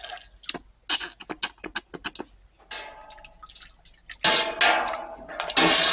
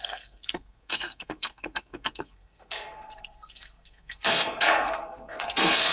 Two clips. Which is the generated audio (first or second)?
second